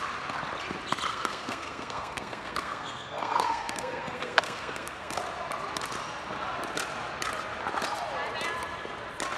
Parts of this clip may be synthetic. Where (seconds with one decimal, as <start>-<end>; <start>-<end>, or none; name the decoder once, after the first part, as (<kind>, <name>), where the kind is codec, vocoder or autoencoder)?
1.1-5.2 (codec, SNAC)